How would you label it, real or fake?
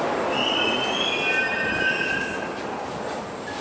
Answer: real